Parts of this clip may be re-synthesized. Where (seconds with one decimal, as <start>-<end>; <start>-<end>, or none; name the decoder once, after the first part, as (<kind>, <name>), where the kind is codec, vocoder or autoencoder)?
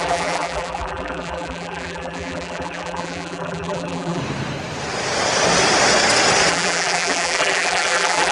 0.0-4.2 (vocoder, BigVGAN v2); 6.5-8.3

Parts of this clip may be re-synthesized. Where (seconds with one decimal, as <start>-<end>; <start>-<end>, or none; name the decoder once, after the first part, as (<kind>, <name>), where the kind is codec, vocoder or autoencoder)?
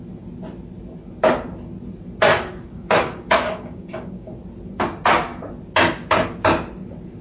2.3-4.3 (codec, DAC)